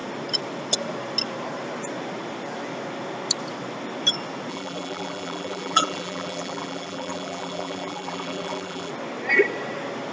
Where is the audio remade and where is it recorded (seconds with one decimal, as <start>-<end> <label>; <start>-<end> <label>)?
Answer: 0.0-4.5 recorded; 4.5-8.9 remade; 8.9-10.1 recorded

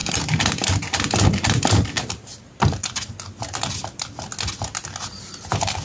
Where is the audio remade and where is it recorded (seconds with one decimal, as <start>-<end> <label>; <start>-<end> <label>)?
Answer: 0.0-3.1 remade; 3.1-5.8 recorded

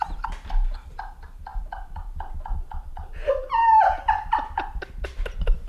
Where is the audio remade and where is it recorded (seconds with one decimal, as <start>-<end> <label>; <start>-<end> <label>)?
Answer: 0.0-5.7 recorded

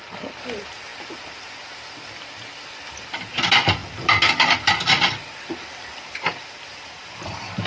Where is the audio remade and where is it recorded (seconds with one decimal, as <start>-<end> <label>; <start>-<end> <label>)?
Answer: 0.0-7.7 recorded

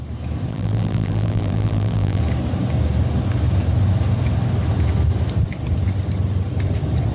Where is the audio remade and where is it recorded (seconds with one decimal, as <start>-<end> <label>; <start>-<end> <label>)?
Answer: 0.0-0.5 recorded; 0.5-2.2 remade; 2.2-7.1 recorded

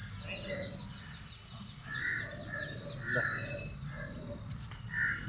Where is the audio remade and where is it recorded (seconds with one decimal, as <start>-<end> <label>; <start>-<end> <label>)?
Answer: 0.0-5.3 recorded

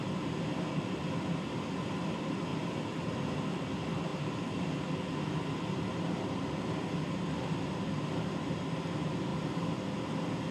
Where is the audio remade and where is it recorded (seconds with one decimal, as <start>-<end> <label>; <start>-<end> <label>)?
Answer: 0.0-2.5 recorded; 2.5-3.4 remade; 3.4-4.1 recorded; 4.1-4.6 remade; 4.6-10.5 recorded

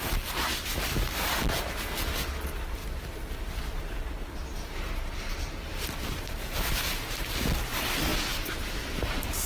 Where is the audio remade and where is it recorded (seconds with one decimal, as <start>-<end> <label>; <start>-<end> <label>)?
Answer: 0.0-2.8 recorded; 2.8-6.9 remade; 6.9-9.5 recorded